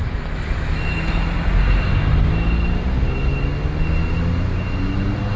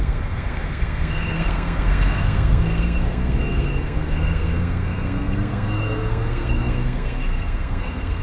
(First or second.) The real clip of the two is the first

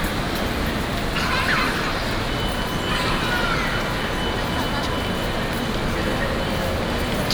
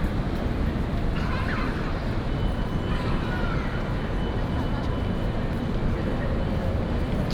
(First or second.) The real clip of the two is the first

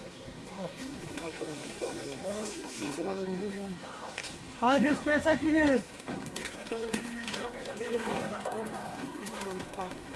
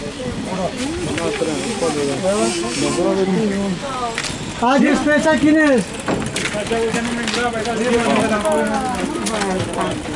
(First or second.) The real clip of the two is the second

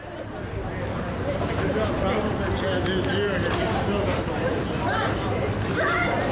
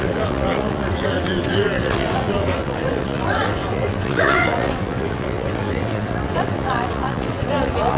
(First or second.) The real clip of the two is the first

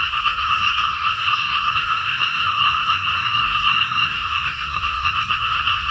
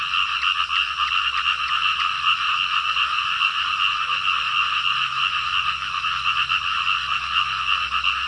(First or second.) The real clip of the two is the second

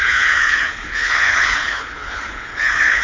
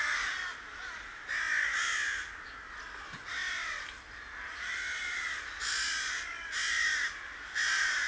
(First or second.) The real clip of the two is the second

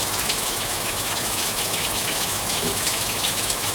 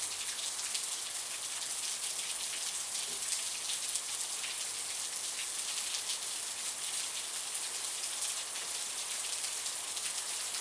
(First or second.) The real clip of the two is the second